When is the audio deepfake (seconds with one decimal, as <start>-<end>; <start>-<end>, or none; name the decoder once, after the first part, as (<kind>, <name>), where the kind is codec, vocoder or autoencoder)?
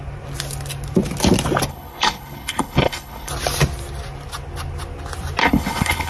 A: 1.7-3.3 (codec, HILCodec); 5.4-6.1